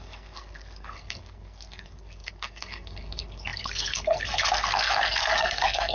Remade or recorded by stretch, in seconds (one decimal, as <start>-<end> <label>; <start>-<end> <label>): 0.0-5.9 remade